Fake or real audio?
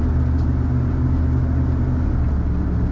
real